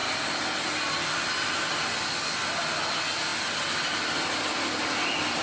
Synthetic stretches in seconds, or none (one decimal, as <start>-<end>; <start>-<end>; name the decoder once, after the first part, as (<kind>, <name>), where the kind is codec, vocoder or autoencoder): none